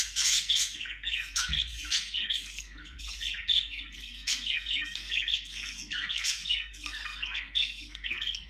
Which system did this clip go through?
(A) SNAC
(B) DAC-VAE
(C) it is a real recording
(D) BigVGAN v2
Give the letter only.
A